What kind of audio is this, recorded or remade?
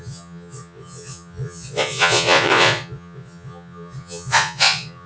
remade